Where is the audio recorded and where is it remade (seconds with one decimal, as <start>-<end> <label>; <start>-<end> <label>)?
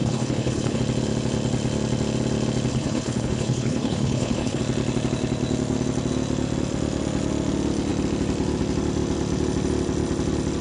0.0-0.8 remade; 0.8-2.7 recorded; 2.7-4.6 remade; 4.6-10.6 recorded